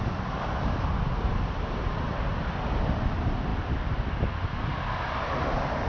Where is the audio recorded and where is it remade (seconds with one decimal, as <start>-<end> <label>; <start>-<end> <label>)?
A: 0.0-5.9 recorded